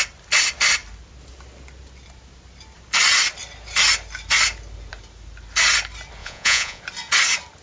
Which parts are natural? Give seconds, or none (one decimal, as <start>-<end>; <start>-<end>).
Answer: 0.0-6.2; 6.8-7.6